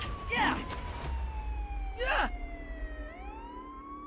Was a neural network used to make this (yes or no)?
yes